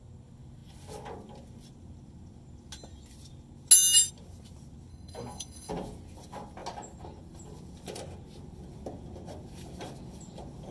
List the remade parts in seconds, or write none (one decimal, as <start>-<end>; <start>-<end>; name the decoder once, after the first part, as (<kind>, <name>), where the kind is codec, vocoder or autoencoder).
4.9-5.7 (codec, SNAC)